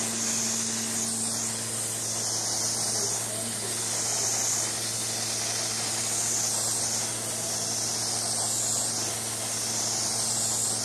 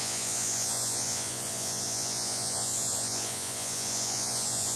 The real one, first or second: first